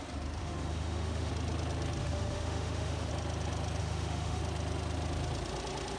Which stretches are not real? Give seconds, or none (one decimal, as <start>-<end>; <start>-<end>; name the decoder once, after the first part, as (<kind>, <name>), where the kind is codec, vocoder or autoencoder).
0.4-1.3 (autoencoder, DAC-VAE); 2.0-3.1; 3.8-4.4